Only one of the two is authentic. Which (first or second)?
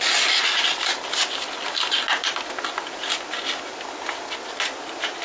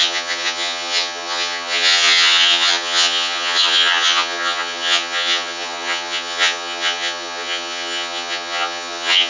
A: first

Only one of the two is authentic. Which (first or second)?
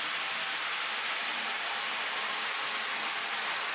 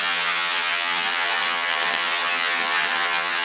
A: first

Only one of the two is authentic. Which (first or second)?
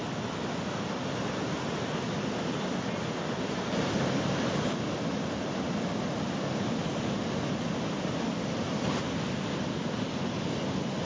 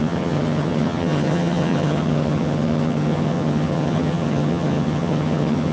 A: first